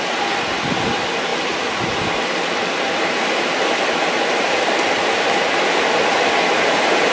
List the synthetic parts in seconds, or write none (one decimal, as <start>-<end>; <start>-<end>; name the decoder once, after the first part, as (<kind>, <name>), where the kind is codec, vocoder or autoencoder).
none